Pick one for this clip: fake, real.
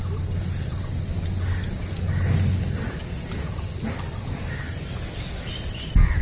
real